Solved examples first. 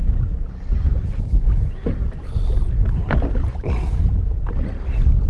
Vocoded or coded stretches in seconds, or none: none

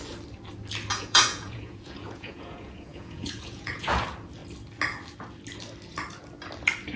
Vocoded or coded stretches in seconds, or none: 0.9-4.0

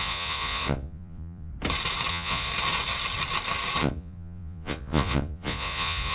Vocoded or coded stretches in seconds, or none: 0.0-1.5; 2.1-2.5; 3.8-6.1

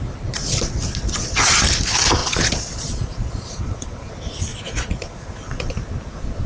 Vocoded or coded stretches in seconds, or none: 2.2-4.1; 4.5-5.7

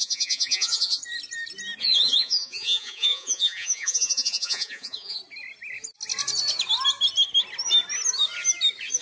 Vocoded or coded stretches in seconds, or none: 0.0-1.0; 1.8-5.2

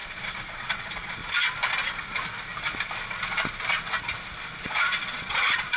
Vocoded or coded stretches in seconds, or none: 0.0-1.2; 4.6-5.8